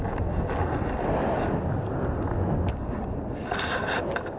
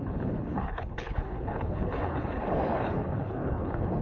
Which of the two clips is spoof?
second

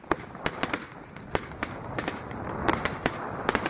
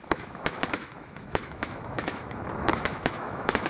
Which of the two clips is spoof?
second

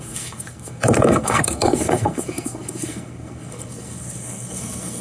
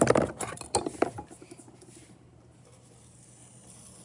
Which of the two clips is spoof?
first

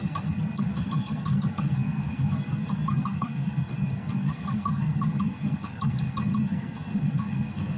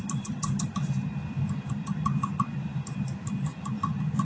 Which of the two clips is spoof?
first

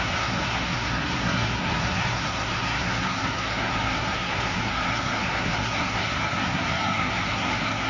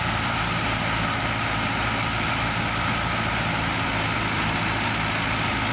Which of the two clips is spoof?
first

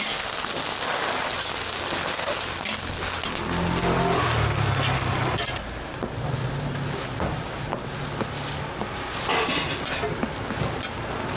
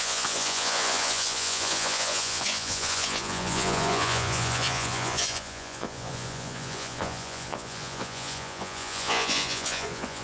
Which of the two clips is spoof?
second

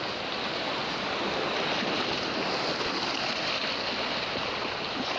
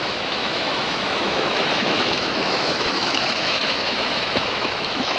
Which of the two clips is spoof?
second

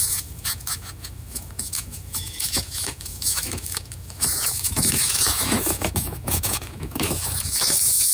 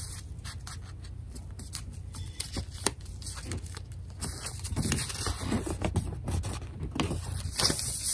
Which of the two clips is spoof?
first